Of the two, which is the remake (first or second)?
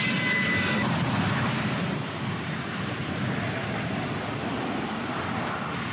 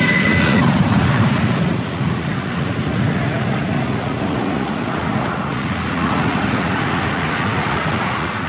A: second